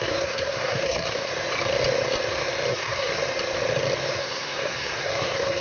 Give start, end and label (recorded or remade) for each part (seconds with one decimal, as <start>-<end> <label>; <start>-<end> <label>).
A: 0.0-1.3 remade; 1.3-2.7 recorded; 2.7-3.2 remade; 3.2-4.2 recorded; 4.2-5.6 remade